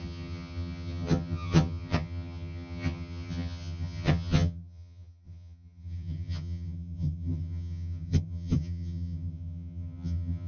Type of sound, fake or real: fake